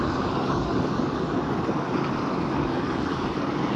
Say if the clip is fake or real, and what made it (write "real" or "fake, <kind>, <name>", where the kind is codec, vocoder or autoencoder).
fake, codec, DAC